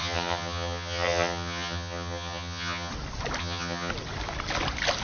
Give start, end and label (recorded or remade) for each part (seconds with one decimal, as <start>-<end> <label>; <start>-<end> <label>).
0.0-2.9 remade; 2.9-3.4 recorded; 3.4-3.9 remade; 3.9-5.0 recorded

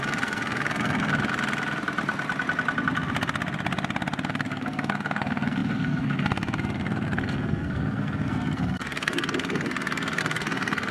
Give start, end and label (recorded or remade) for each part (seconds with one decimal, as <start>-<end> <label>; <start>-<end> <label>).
0.0-1.1 remade; 1.1-4.3 recorded; 4.3-10.9 remade